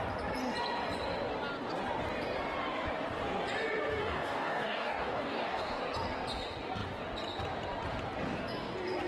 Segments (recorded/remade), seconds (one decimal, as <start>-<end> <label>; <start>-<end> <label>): 0.0-3.9 recorded; 3.9-5.8 remade; 5.8-9.1 recorded